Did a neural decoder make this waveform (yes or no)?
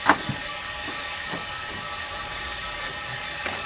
yes